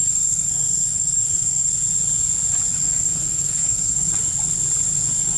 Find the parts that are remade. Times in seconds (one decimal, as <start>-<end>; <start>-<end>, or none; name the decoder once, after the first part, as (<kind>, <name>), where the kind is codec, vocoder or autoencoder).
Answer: 0.0-1.7 (codec, SNAC); 2.8-4.1